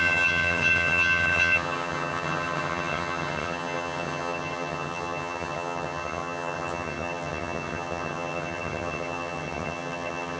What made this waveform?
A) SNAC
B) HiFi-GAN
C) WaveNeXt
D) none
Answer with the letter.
B